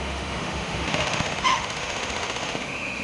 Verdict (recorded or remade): remade